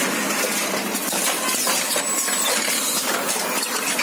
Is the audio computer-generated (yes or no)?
no